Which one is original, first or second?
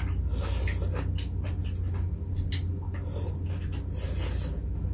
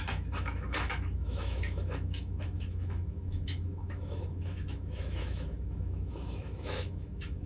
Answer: first